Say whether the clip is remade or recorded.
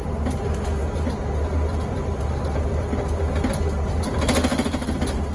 recorded